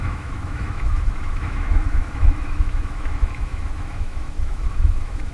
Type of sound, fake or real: fake